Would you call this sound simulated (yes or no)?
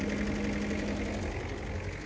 no